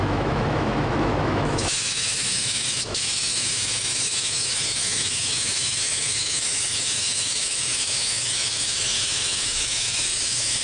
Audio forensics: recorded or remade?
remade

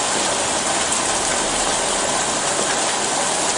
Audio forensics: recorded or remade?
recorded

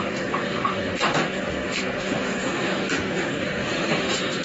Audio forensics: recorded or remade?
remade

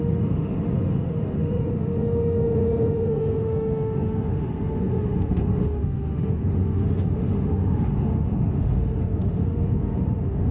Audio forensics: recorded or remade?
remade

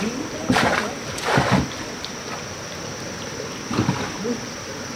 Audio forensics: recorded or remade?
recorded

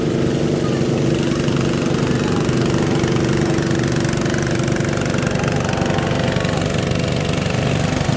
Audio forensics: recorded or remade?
recorded